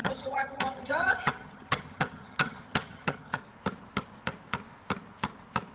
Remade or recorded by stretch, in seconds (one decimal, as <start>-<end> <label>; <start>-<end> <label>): 0.0-3.4 remade; 3.4-5.7 recorded